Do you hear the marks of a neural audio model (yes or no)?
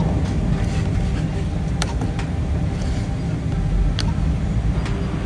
no